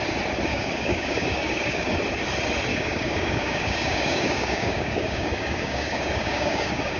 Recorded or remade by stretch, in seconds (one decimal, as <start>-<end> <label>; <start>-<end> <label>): 0.0-0.5 recorded; 0.5-2.0 remade; 2.0-2.7 recorded; 2.7-7.0 remade